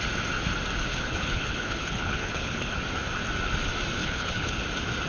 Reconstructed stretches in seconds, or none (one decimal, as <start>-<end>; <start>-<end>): 0.9-2.8; 4.0-4.6